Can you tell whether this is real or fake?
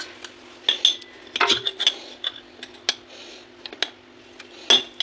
real